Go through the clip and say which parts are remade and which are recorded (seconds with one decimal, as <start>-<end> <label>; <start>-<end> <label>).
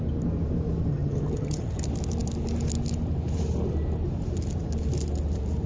0.0-0.9 recorded; 0.9-1.8 remade; 1.8-5.7 recorded